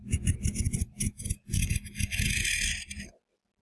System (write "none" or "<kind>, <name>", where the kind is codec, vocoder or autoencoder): none